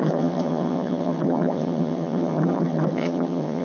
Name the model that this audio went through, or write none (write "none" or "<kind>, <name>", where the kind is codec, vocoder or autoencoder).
vocoder, HiFi-GAN